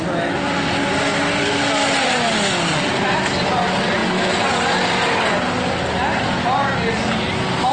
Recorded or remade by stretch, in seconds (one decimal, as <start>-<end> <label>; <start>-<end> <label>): 0.0-7.7 recorded